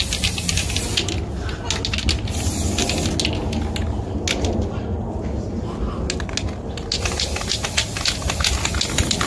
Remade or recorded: recorded